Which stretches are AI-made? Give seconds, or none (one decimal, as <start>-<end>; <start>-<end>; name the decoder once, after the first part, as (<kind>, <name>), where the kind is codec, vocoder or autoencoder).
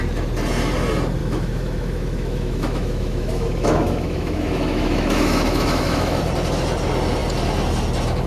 1.2-6.2 (autoencoder, DAC-VAE)